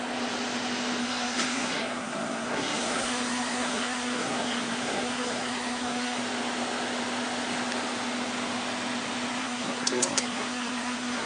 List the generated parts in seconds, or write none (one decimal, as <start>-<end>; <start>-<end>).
1.0-6.2; 9.4-11.3

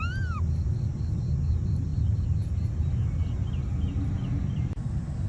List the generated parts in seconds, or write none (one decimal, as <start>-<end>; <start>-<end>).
none

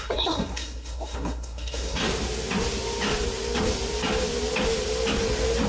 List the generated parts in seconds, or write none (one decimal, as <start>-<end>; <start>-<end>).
0.0-2.0

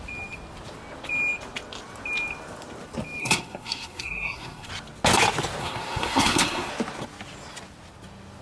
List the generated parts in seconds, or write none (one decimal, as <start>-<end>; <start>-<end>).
3.2-4.7; 5.6-6.7

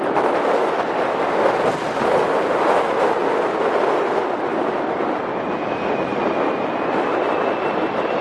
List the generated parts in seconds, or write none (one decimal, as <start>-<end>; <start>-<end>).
none

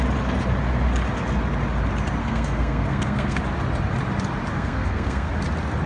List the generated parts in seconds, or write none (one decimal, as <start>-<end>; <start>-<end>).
2.2-3.4; 4.5-5.3

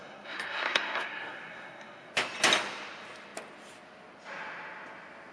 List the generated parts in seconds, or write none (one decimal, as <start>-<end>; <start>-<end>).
0.0-2.1

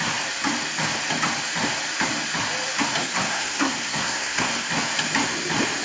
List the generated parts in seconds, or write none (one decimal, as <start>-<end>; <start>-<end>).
3.0-4.7